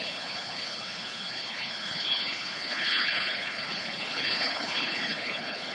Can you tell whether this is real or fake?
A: fake